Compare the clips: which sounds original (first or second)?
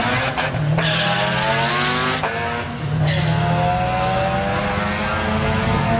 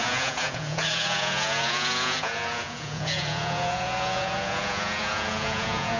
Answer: first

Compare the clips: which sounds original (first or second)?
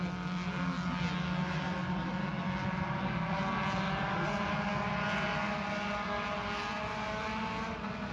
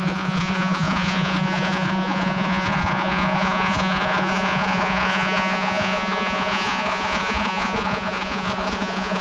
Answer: first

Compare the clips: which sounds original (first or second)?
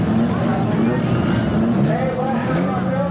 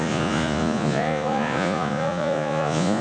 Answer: first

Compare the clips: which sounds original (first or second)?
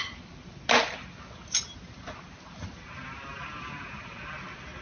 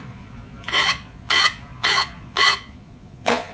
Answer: first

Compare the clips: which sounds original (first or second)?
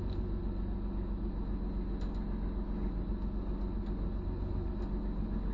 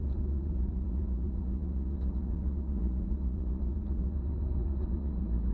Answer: first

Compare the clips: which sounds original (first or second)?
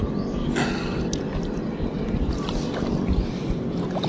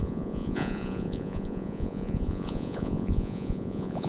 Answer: first